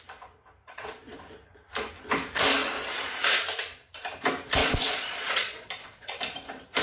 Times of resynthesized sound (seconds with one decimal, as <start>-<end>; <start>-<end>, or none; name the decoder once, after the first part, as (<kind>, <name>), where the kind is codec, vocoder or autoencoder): 0.6-1.2 (vocoder, Vocos); 4.6-6.2